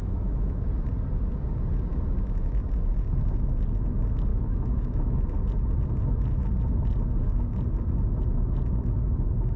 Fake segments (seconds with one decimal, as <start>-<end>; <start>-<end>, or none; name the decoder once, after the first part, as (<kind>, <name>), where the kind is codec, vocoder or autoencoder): 0.0-0.6 (autoencoder, DAC-VAE); 4.3-5.2